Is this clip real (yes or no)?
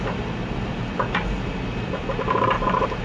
yes